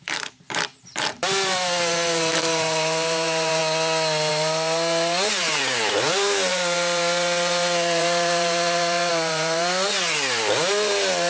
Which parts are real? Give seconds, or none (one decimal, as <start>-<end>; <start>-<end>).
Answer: 3.6-4.3